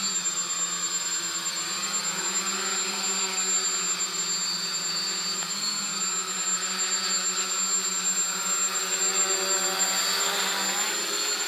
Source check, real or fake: real